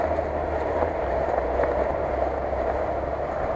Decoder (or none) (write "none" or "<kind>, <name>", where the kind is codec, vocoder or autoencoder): none